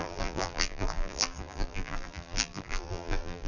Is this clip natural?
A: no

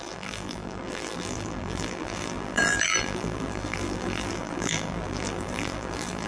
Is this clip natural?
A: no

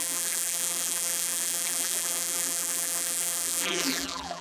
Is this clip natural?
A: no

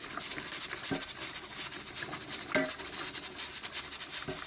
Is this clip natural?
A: yes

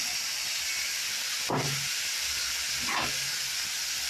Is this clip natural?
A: yes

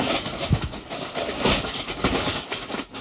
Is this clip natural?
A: no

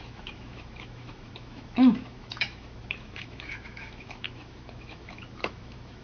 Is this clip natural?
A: no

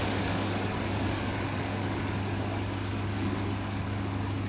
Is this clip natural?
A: no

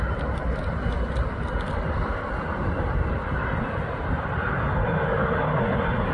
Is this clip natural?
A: no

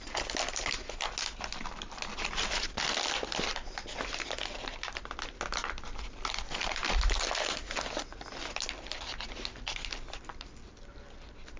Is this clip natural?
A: yes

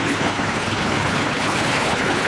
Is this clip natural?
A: no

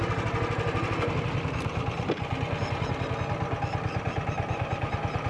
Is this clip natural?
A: yes